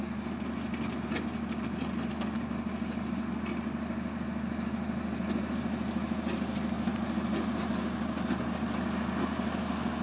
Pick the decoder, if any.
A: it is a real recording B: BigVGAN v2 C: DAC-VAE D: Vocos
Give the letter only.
A